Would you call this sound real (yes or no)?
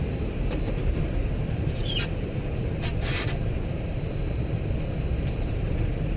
yes